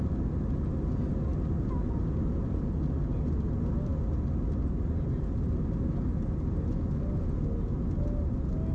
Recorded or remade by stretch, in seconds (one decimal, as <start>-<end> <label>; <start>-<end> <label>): 0.0-8.7 recorded